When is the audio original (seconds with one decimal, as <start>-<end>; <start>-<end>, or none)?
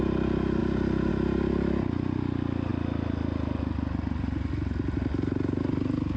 0.0-6.2